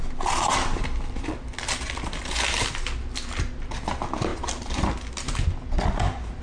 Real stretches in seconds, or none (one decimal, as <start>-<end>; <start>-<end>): 0.0-6.4